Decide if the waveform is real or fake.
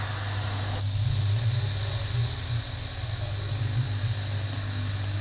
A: real